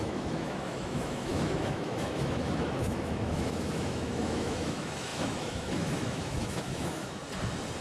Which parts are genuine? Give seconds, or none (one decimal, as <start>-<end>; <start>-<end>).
7.2-7.8